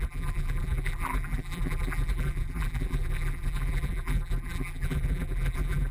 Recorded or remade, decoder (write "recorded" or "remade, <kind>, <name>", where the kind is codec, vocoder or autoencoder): remade, vocoder, BigVGAN v2